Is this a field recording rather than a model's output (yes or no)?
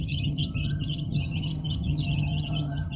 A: no